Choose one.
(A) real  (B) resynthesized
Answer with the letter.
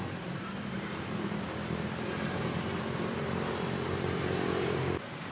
B